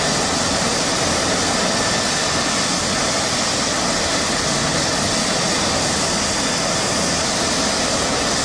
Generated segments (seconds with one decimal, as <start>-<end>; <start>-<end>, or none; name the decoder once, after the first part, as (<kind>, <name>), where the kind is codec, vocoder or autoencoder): none